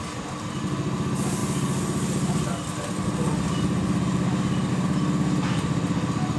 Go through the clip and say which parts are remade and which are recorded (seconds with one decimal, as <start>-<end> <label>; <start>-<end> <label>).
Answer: 0.0-6.4 recorded